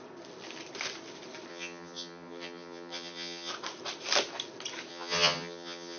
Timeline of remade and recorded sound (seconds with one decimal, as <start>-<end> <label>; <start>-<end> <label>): 0.0-1.5 recorded; 1.5-3.5 remade; 3.5-4.9 recorded; 4.9-6.0 remade